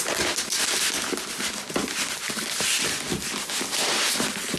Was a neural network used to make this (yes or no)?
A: no